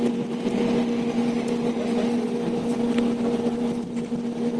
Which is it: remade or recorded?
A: recorded